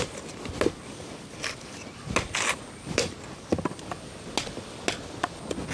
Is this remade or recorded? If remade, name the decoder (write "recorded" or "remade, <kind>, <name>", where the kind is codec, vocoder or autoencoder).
recorded